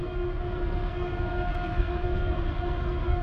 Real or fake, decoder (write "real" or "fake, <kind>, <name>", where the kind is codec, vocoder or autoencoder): fake, codec, SNAC